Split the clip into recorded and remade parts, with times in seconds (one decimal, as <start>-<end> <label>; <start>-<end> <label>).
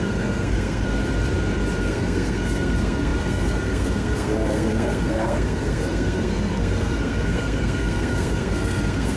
0.0-1.0 remade; 1.0-1.8 recorded; 1.8-9.2 remade